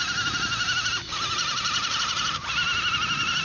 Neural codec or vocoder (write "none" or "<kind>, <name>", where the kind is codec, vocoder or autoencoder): none